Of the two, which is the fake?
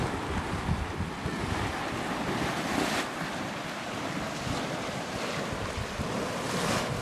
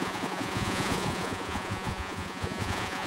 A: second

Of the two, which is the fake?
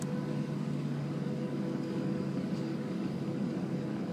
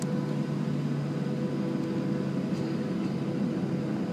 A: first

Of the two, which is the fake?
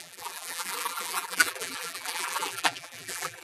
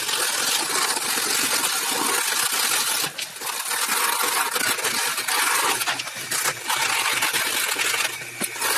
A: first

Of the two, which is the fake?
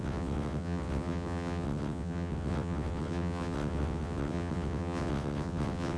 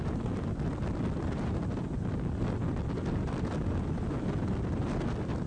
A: first